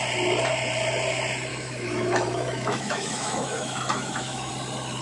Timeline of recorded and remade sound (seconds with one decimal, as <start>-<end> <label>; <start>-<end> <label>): 0.0-1.5 recorded; 1.5-4.5 remade; 4.5-5.0 recorded